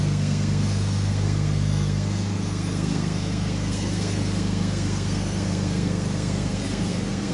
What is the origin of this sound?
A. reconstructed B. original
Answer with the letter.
A